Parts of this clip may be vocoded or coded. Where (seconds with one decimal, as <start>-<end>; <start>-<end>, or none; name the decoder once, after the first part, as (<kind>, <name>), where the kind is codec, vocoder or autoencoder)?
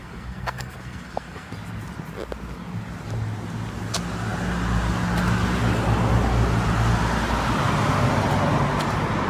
0.0-1.5 (codec, SNAC)